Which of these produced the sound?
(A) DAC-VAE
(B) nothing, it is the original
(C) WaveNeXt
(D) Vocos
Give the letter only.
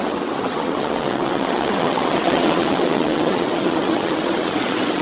C